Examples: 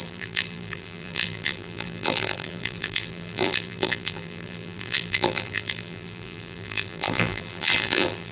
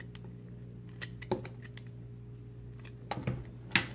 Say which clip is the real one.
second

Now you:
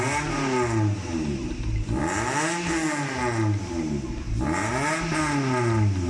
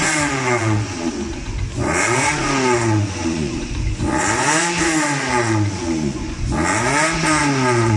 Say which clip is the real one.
first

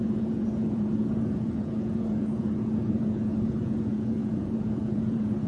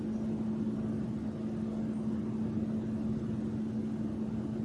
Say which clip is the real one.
second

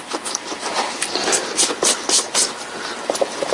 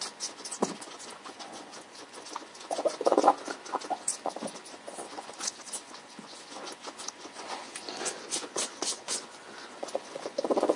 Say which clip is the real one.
first